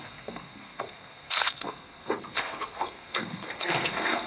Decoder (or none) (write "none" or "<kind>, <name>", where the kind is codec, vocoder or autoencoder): codec, SNAC